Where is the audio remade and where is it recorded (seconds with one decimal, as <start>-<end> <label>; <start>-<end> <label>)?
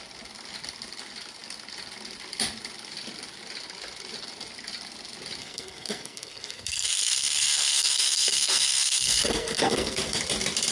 0.0-5.4 recorded; 5.4-10.2 remade; 10.2-10.7 recorded